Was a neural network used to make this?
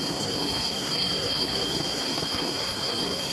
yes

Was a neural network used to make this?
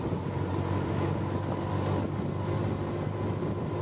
no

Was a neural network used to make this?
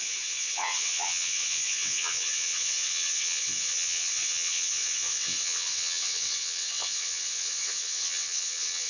yes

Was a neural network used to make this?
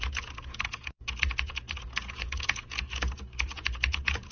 yes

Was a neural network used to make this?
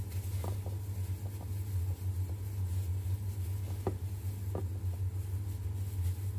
no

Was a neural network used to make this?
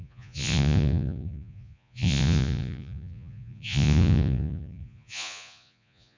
yes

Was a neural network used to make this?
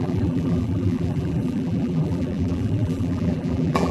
yes